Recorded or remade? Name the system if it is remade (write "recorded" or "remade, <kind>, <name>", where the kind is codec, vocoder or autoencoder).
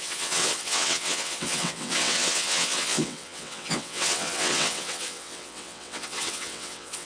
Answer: remade, vocoder, WaveNeXt